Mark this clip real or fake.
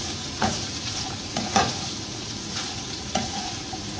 fake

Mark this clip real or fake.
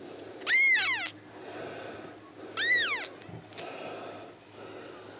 real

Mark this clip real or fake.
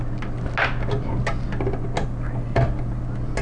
real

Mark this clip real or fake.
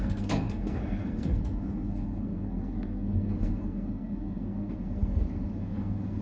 fake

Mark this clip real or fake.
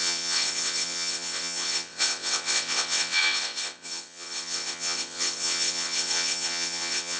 fake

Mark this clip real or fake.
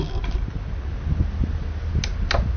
real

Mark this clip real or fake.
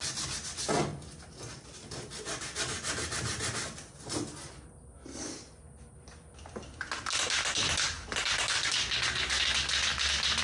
real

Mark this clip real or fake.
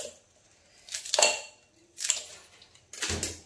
real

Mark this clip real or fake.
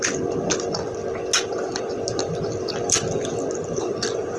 real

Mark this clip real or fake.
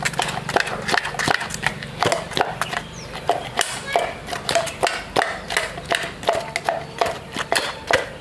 real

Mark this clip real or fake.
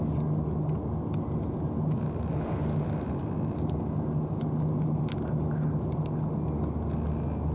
real